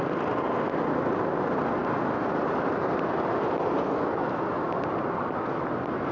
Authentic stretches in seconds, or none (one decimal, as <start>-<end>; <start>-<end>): 0.0-6.1

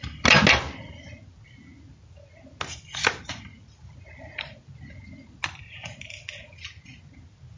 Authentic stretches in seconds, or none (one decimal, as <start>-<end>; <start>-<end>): 0.0-7.6

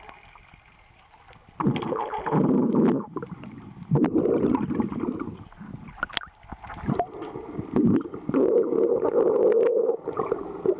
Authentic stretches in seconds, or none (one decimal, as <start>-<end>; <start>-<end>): 0.0-10.8

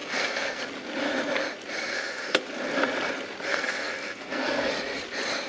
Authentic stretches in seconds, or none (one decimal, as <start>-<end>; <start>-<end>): 0.6-1.9; 2.4-3.5; 4.7-5.5

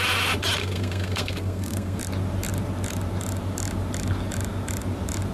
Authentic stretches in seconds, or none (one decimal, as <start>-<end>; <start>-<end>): 0.0-0.6; 2.0-5.3

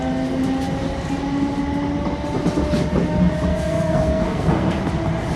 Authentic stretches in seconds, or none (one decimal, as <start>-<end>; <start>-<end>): 0.0-3.5; 4.8-5.4